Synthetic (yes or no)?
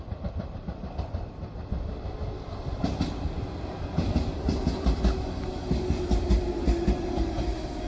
no